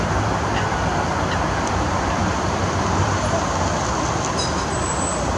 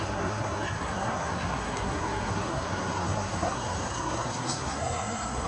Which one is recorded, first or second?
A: first